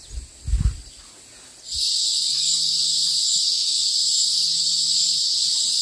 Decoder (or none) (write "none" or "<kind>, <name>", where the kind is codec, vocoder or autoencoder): none